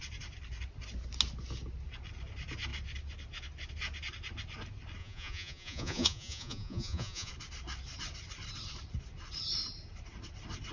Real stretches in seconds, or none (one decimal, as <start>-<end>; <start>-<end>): 0.0-5.0; 7.3-10.7